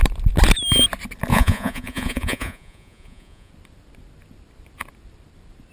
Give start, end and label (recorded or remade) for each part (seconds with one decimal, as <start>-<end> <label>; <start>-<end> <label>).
0.0-1.3 recorded; 1.3-3.5 remade; 3.5-5.7 recorded